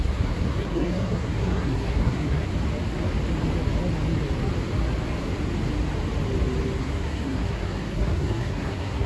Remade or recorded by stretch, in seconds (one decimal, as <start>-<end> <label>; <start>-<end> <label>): 0.0-2.5 remade; 2.5-6.8 recorded; 6.8-9.1 remade